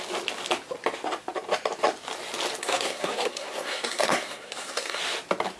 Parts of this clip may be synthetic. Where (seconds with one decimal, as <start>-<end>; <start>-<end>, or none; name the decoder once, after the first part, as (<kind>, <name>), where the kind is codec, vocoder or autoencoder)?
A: 2.6-5.0 (codec, SNAC)